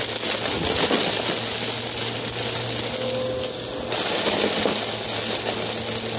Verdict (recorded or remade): recorded